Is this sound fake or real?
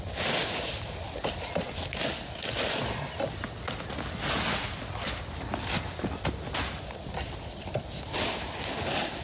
real